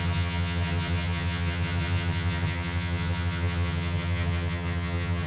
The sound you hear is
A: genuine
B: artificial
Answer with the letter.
B